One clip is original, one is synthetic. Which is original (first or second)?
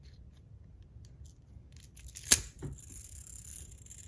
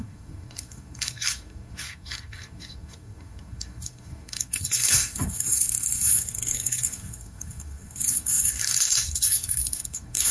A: first